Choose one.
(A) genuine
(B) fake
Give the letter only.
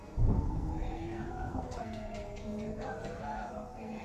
B